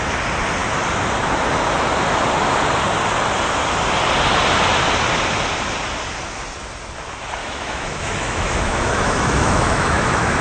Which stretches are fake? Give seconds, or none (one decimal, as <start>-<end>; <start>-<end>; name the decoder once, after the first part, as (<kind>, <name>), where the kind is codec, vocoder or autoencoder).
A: 7.4-10.4 (autoencoder, DAC-VAE)